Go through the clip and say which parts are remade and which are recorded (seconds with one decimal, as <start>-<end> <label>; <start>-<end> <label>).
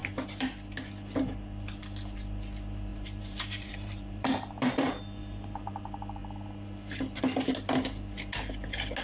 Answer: 0.0-2.9 recorded; 2.9-4.7 remade; 4.7-5.2 recorded; 5.2-5.7 remade; 5.7-9.0 recorded